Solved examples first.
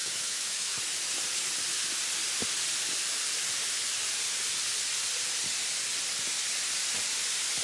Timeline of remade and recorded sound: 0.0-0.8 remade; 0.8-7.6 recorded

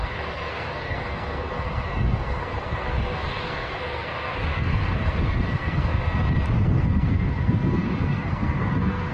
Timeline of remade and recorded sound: 0.0-5.9 remade; 5.9-6.6 recorded; 6.6-9.1 remade

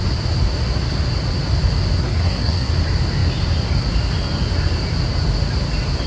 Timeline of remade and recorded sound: 0.0-2.0 recorded; 2.0-2.7 remade; 2.7-6.1 recorded

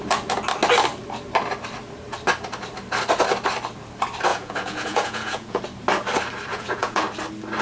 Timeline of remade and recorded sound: 0.0-4.3 recorded; 4.3-5.6 remade; 5.6-6.5 recorded; 6.5-7.0 remade; 7.0-7.6 recorded

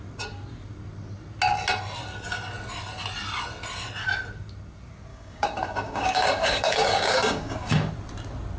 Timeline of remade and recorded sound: 0.0-5.1 recorded; 5.1-7.9 remade; 7.9-8.6 recorded

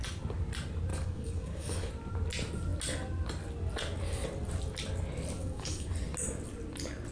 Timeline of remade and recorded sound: 0.0-0.9 recorded; 0.9-1.9 remade; 1.9-5.4 recorded; 5.4-5.9 remade; 5.9-7.1 recorded